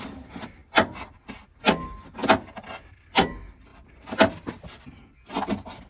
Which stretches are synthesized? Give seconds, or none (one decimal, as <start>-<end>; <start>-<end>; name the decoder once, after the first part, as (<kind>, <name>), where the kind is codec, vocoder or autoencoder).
none